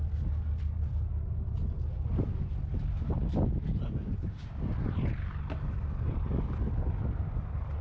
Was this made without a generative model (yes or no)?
yes